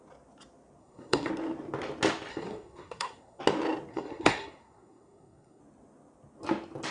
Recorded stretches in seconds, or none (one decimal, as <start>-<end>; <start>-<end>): 0.0-0.8; 1.3-2.3; 3.4-3.9; 5.6-6.9

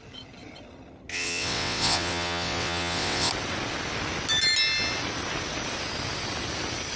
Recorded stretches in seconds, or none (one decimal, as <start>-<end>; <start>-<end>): 0.0-1.1; 3.3-7.0